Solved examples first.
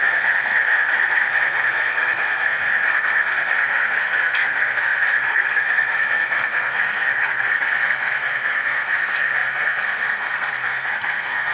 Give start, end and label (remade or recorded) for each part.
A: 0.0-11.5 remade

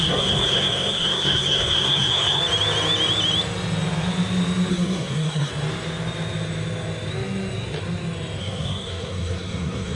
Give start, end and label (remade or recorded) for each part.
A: 0.0-2.4 remade; 2.4-4.7 recorded; 4.7-5.5 remade; 5.5-8.4 recorded; 8.4-10.0 remade